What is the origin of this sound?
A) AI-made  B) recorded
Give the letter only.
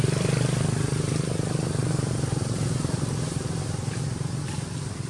A